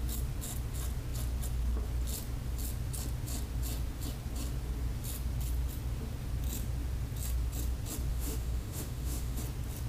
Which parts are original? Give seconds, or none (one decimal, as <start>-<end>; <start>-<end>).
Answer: 0.0-8.1; 9.4-9.9